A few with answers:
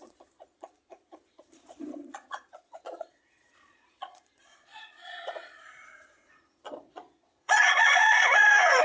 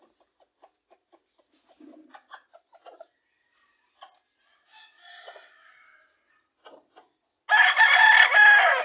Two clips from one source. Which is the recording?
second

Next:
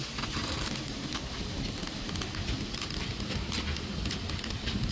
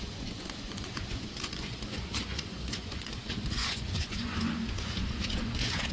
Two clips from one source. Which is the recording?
first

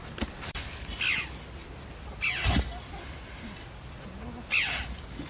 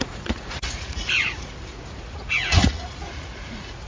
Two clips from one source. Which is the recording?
first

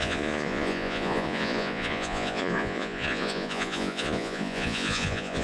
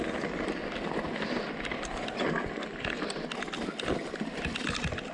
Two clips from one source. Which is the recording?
second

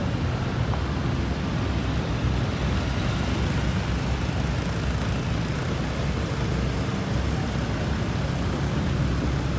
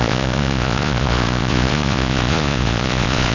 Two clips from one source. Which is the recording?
first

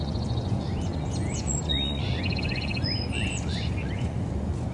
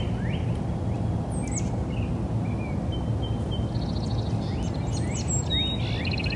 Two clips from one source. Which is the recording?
second